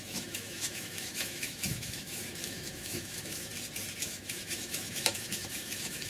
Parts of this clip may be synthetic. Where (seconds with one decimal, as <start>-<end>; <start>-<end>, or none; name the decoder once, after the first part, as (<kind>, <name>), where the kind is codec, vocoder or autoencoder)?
0.0-3.5 (autoencoder, DAC-VAE); 4.0-6.1